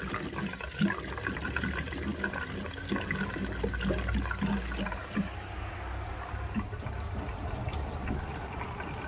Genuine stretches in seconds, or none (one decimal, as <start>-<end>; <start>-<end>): 2.1-5.7